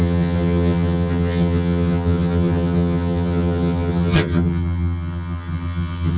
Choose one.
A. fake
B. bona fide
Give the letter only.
A